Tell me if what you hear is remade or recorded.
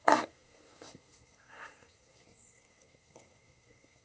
remade